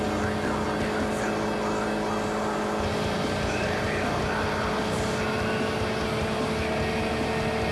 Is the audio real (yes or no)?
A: no